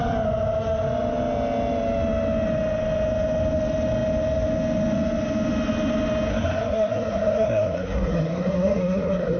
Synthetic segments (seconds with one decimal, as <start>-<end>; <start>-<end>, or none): 6.3-9.4